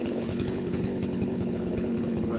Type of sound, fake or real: fake